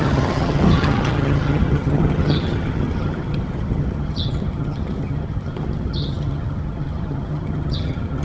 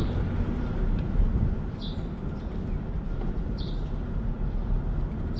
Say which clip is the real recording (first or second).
second